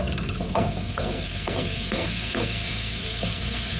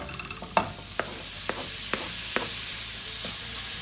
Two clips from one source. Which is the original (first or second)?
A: second